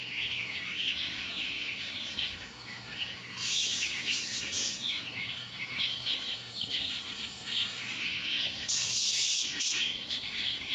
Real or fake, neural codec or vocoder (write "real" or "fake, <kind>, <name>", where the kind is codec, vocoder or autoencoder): fake, codec, SNAC